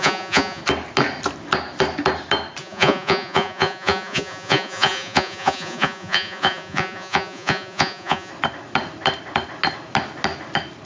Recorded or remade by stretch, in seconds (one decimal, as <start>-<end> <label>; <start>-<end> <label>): 0.0-0.6 remade; 0.6-2.6 recorded; 2.6-8.3 remade; 8.3-10.9 recorded